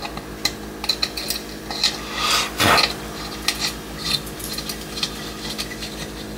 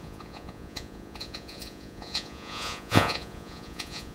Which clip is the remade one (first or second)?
second